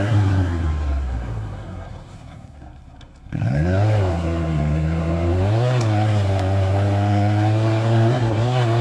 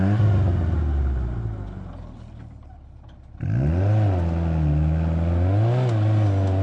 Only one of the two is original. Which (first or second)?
second